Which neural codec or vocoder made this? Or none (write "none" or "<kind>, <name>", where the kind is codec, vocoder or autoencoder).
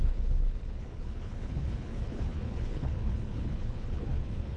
codec, HILCodec